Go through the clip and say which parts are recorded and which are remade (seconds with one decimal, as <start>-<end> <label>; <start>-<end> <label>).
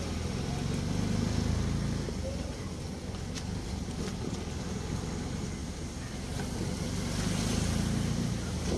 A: 0.0-8.8 recorded